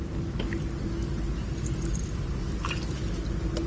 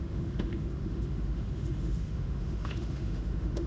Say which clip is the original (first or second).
first